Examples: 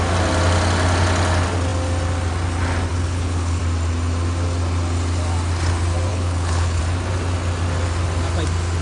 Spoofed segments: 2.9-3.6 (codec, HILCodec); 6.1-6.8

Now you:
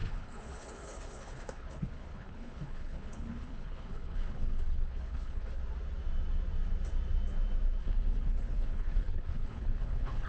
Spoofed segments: 0.0-5.6 (codec, HILCodec); 7.8-10.3